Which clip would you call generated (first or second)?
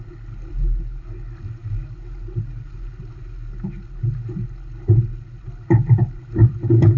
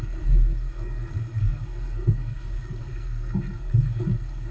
second